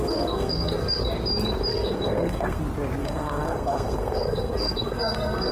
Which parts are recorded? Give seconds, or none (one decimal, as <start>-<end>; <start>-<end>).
1.0-1.7; 2.6-3.0